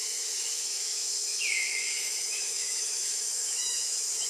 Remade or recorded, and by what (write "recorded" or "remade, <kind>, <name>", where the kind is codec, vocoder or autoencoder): remade, autoencoder, DAC-VAE